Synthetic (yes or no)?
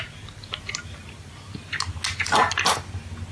no